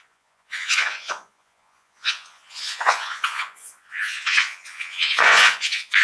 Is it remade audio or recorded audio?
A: remade